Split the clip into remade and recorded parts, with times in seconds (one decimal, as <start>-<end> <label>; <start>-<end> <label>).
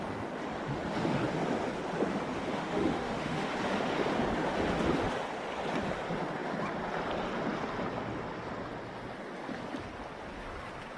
0.0-2.5 recorded; 2.5-3.5 remade; 3.5-11.0 recorded